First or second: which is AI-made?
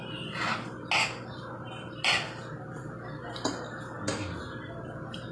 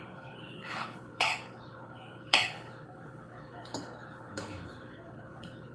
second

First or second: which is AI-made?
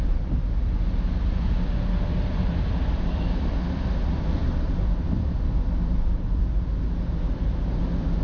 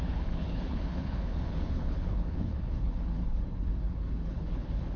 second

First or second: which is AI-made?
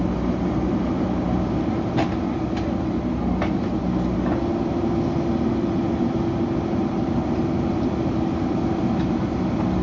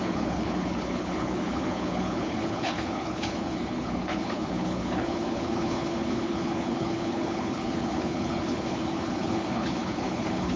second